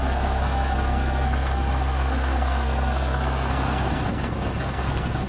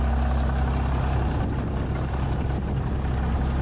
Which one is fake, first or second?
first